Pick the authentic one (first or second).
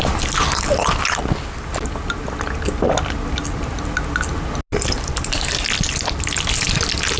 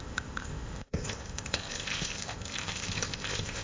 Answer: first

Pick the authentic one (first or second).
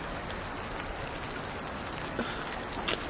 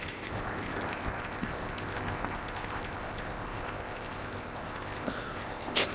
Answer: first